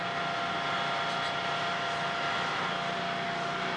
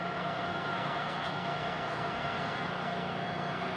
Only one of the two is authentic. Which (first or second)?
first